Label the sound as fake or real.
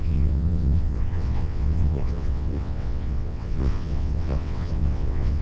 fake